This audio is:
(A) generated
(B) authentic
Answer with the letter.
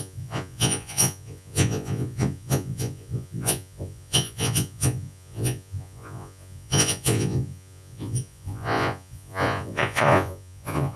A